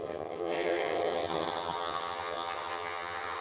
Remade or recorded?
remade